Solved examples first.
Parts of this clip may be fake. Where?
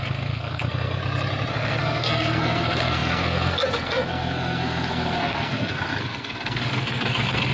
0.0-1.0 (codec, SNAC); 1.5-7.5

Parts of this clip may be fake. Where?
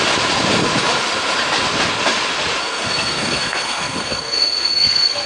2.6-5.3 (codec, SNAC)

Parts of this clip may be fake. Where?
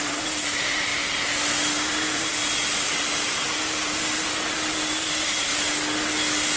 0.0-0.9 (vocoder, BigVGAN v2); 1.7-2.4; 3.0-5.5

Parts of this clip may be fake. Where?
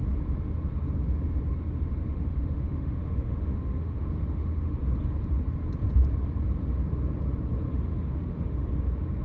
2.0-4.8 (autoencoder, DAC-VAE); 7.7-8.7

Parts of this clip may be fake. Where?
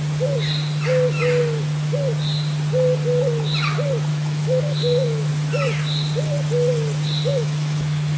4.1-5.3 (autoencoder, DAC-VAE); 7.3-8.2